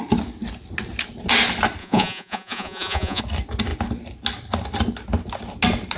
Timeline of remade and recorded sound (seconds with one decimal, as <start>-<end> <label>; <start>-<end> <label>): 0.0-1.8 recorded; 1.8-3.2 remade; 3.2-6.0 recorded

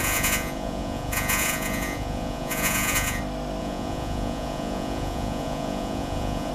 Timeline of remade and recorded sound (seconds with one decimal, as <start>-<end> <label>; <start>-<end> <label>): 0.0-3.2 remade; 3.2-3.6 recorded; 3.6-6.5 remade

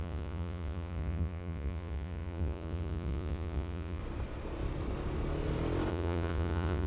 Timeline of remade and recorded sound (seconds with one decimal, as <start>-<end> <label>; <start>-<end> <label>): 0.0-4.0 remade; 4.0-5.9 recorded; 5.9-6.9 remade

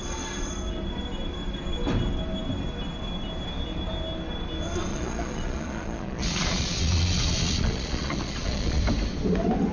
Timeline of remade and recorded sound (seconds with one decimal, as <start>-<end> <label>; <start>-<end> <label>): 0.0-4.9 recorded; 4.9-8.8 remade; 8.8-9.7 recorded

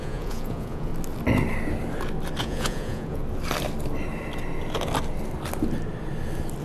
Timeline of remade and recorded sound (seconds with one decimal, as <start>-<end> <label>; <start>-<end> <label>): 0.0-0.9 remade; 0.9-2.4 recorded; 2.4-3.2 remade; 3.2-6.6 recorded